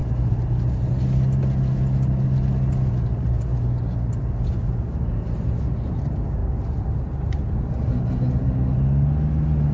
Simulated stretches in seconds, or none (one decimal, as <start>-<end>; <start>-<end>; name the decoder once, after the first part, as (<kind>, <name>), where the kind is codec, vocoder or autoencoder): none